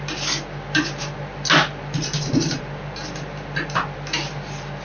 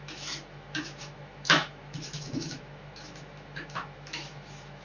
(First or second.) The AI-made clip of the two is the second